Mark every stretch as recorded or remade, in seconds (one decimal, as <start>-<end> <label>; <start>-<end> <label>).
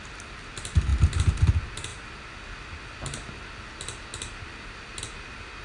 0.0-5.6 recorded